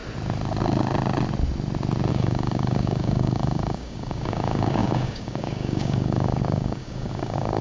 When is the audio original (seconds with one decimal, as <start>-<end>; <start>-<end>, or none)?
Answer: 0.0-2.1